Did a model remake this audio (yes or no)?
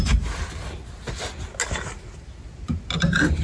no